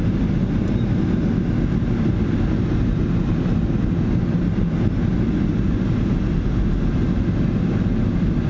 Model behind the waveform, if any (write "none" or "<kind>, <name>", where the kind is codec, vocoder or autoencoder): none